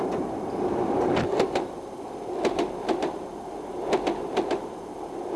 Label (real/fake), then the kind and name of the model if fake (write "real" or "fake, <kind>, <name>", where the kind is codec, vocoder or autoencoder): real